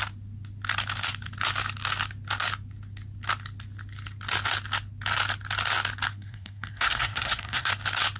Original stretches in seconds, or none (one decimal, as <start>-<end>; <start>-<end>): 0.0-6.1; 7.7-8.2